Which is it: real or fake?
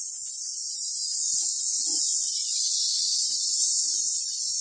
real